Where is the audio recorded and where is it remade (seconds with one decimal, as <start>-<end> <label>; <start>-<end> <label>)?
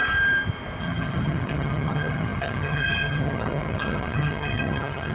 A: 0.0-0.8 recorded; 0.8-5.1 remade